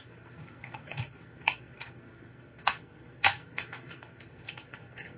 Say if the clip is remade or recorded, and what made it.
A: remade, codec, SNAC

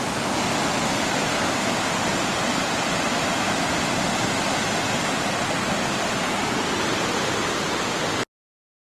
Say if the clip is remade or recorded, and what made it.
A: recorded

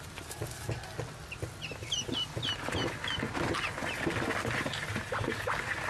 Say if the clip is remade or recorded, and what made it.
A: recorded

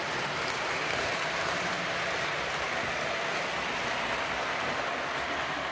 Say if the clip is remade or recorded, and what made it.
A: recorded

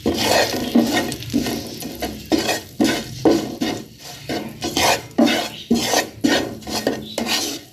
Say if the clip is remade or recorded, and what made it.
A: recorded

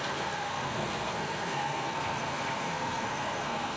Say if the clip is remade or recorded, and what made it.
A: remade, codec, SNAC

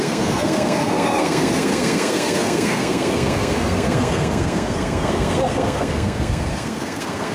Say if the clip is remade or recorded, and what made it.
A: remade, codec, SNAC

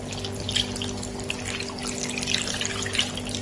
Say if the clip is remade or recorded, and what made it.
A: recorded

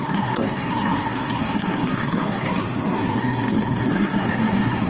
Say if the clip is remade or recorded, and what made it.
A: remade, codec, SNAC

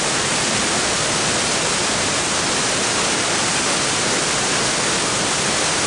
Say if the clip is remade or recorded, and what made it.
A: recorded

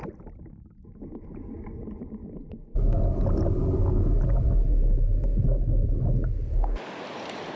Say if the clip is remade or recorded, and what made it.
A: recorded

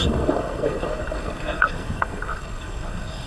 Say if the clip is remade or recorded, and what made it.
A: remade, codec, SNAC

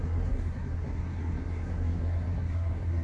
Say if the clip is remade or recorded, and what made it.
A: remade, codec, SNAC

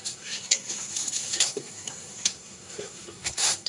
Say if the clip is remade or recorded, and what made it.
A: remade, codec, SNAC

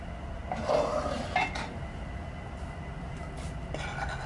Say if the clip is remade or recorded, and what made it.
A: recorded